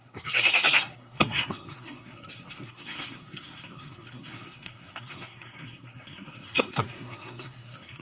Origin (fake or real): fake